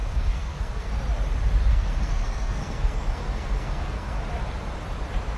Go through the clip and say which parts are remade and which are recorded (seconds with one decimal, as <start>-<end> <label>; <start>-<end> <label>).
0.0-0.9 remade; 0.9-1.7 recorded; 1.7-4.2 remade; 4.2-5.4 recorded